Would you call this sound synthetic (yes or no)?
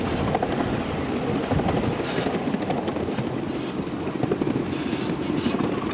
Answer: no